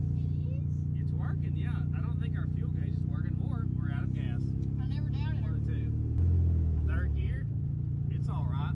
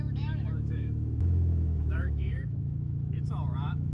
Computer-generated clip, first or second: second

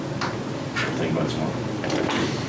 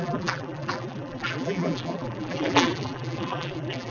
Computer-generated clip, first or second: second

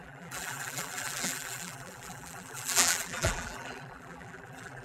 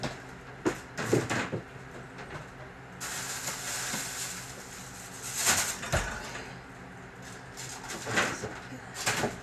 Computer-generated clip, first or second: first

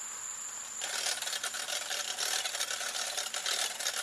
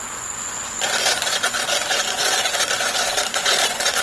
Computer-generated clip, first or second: second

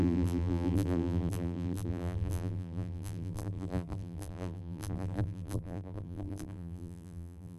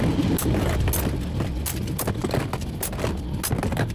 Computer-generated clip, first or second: first